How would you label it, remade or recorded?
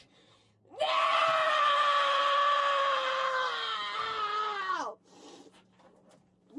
recorded